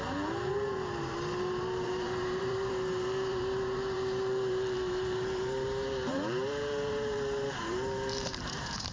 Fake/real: fake